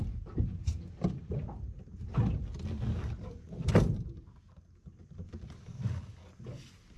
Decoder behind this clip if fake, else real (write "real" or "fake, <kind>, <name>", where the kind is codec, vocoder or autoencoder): real